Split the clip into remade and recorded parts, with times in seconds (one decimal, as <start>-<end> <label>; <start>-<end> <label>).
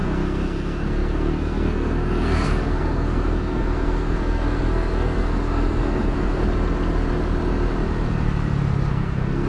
0.0-6.4 remade; 6.4-8.9 recorded; 8.9-9.5 remade